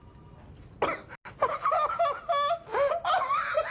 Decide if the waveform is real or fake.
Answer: real